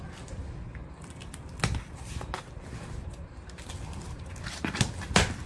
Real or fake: real